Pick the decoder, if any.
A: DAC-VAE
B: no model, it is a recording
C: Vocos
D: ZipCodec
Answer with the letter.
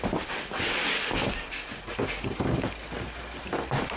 B